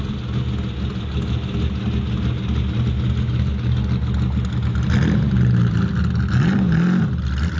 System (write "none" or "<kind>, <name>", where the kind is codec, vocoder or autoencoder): none